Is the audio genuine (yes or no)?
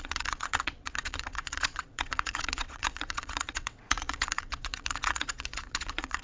no